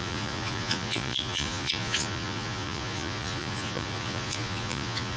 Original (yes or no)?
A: no